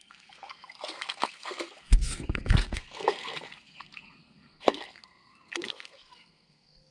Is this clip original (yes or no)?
no